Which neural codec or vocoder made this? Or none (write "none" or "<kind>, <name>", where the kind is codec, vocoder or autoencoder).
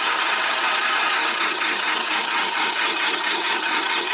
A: vocoder, HiFi-GAN